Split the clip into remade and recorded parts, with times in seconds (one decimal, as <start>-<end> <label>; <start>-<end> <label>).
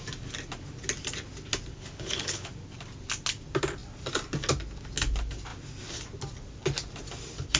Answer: 0.0-1.7 recorded; 1.7-2.5 remade; 2.5-7.6 recorded